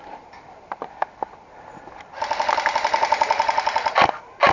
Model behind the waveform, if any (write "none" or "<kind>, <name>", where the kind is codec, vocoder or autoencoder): none